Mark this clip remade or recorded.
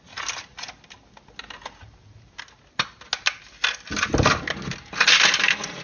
recorded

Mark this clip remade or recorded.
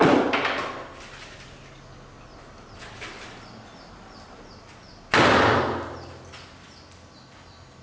recorded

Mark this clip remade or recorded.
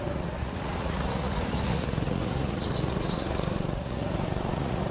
remade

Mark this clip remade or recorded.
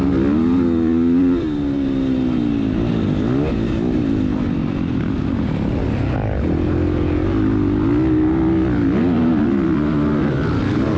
recorded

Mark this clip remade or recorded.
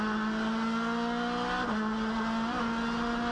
recorded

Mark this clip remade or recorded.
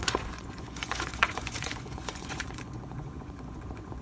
remade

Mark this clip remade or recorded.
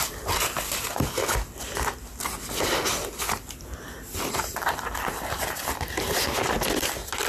recorded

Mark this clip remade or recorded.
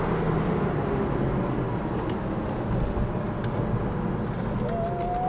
recorded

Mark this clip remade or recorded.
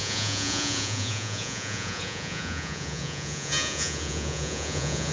remade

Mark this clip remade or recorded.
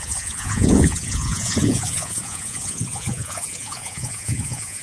remade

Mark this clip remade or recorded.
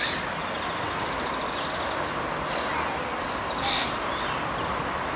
recorded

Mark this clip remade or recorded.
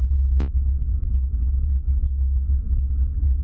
recorded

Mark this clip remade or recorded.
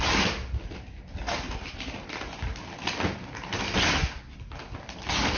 recorded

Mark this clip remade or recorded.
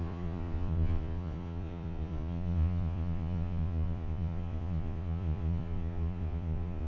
remade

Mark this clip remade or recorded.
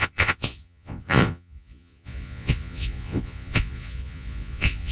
remade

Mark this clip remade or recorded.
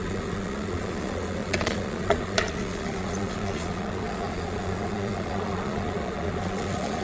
remade